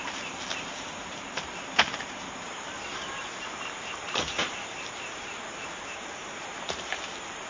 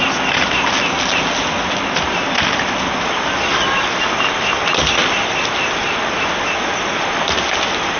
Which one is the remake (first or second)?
first